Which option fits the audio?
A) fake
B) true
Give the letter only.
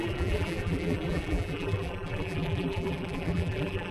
A